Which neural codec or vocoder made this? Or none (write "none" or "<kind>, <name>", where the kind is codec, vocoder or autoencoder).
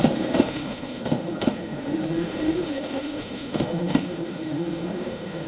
autoencoder, DAC-VAE